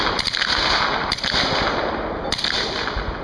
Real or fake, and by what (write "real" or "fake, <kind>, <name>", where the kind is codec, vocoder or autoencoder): real